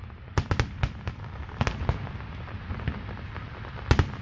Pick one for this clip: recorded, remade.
recorded